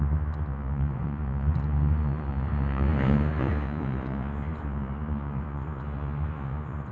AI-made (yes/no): yes